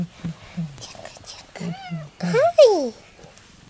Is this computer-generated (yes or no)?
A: no